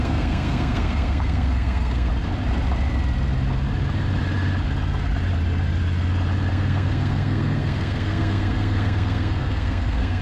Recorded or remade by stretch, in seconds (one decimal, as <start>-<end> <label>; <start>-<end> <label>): 0.0-2.1 remade; 2.1-6.5 recorded; 6.5-10.2 remade

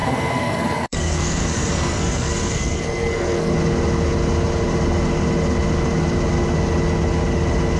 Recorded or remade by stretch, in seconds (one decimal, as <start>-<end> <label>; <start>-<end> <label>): 0.0-3.5 remade; 3.5-7.8 recorded

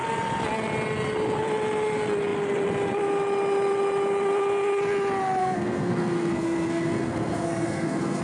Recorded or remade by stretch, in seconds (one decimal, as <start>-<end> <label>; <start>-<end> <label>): 0.0-5.4 recorded; 5.4-8.2 remade

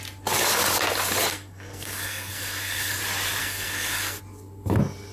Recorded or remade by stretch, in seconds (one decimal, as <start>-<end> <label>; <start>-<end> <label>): 0.0-1.3 recorded; 1.3-3.0 remade; 3.0-3.4 recorded; 3.4-4.2 remade; 4.2-5.1 recorded

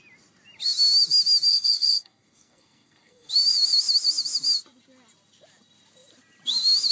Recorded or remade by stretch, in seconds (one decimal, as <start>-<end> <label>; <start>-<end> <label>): 0.0-1.5 recorded; 1.5-3.3 remade; 3.3-6.9 recorded

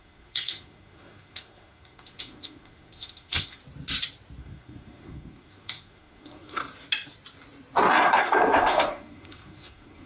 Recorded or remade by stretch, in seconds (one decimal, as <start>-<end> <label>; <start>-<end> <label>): 0.0-3.6 remade; 3.6-4.4 recorded; 4.4-6.6 remade; 6.6-8.0 recorded; 8.0-10.1 remade